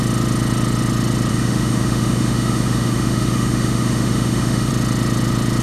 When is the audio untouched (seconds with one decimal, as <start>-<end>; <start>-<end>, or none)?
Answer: 0.0-1.3; 4.7-5.6